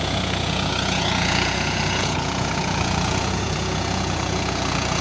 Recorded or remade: remade